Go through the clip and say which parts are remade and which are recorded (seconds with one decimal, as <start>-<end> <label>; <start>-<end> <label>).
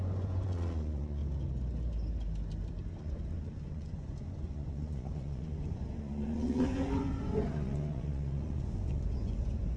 0.0-1.2 remade; 1.2-3.0 recorded; 3.0-9.8 remade